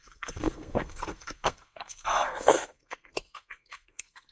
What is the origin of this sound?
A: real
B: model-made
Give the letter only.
B